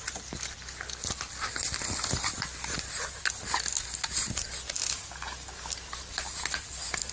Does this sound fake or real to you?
real